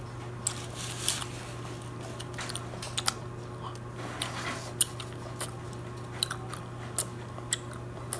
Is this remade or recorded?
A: recorded